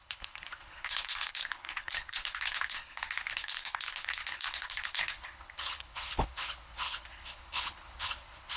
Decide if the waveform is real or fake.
fake